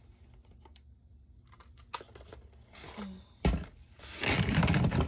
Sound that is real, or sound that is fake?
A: real